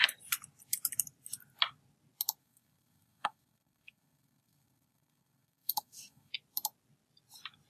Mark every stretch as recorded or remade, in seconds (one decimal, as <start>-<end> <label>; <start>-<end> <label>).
0.0-2.4 recorded; 2.4-6.3 remade; 6.3-7.7 recorded